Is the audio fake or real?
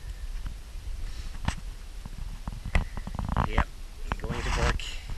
fake